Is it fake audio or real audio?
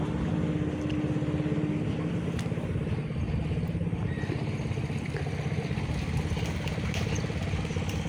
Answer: real